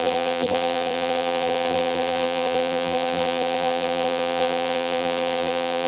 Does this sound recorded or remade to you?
remade